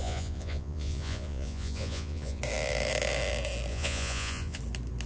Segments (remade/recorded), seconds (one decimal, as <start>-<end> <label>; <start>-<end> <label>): 0.0-2.4 remade; 2.4-3.7 recorded; 3.7-4.6 remade; 4.6-5.1 recorded